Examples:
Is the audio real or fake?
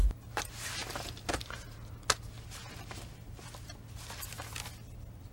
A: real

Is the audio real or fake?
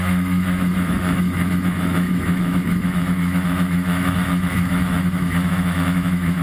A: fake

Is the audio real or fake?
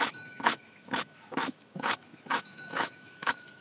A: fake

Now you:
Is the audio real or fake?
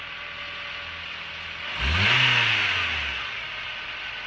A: real